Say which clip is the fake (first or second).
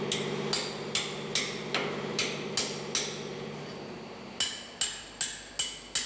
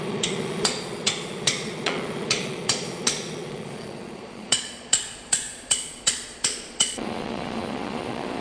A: second